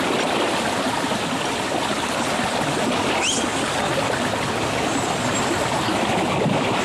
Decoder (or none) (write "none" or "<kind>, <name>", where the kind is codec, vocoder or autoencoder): none